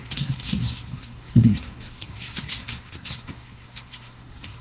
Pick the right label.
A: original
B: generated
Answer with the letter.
B